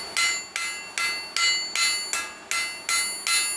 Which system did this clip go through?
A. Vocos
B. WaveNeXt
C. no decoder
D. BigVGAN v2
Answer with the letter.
C